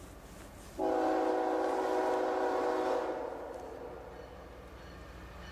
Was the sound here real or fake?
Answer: real